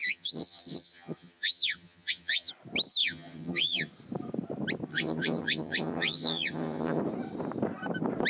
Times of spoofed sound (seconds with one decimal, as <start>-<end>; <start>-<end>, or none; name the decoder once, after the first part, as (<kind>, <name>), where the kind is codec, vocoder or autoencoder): 0.0-2.5 (vocoder, HiFi-GAN); 3.0-3.9; 4.9-7.0